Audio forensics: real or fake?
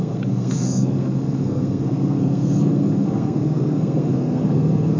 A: fake